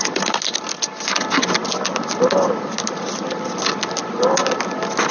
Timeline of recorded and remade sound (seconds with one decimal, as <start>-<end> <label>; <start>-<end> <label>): 0.0-5.1 recorded